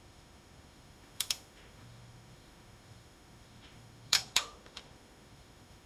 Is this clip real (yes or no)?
no